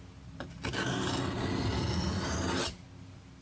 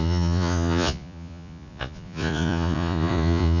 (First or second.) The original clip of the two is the first